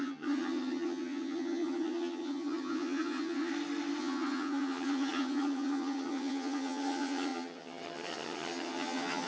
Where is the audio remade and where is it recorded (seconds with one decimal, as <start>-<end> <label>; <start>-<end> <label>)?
0.0-3.5 remade; 3.5-4.0 recorded; 4.0-9.3 remade